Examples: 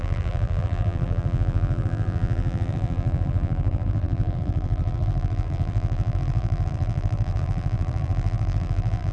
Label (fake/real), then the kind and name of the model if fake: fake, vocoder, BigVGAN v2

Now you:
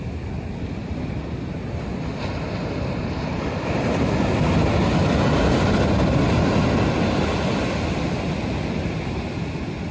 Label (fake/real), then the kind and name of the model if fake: real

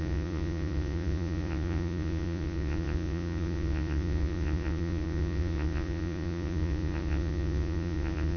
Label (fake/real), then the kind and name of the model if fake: fake, vocoder, Vocos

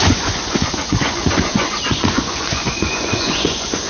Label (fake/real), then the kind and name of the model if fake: fake, vocoder, Vocos